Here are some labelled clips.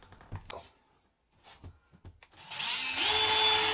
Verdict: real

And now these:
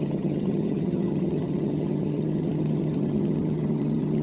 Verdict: fake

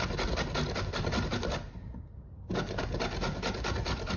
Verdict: real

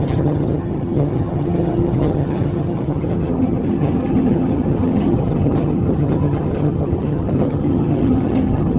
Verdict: fake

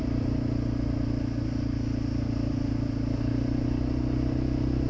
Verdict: real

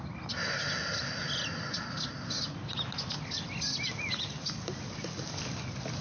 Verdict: real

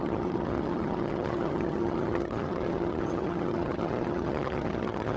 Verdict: fake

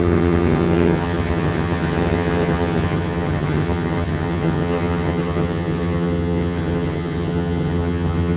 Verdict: fake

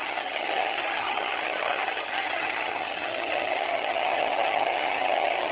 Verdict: fake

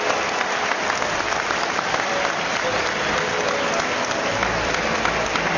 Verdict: real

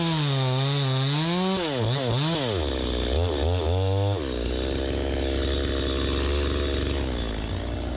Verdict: real